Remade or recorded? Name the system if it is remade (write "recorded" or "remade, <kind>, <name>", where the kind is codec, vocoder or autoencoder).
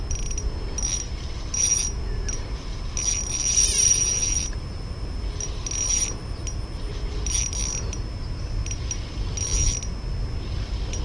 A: recorded